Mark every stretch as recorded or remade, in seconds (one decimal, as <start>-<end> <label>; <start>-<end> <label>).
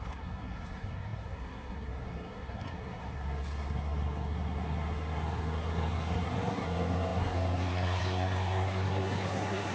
0.0-9.7 remade